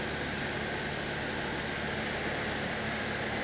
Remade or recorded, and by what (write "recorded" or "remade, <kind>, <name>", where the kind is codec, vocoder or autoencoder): recorded